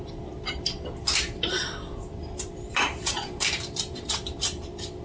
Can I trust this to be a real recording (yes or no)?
no